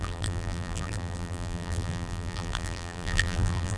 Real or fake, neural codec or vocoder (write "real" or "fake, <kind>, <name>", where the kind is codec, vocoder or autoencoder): fake, vocoder, BigVGAN v2